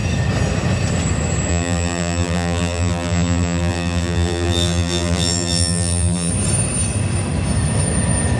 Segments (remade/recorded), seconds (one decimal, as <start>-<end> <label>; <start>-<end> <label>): 0.0-1.5 recorded; 1.5-6.3 remade; 6.3-8.4 recorded